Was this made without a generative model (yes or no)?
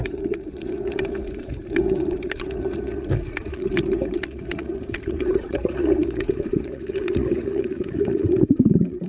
no